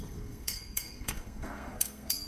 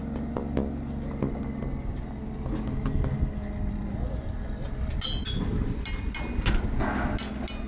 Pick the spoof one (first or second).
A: first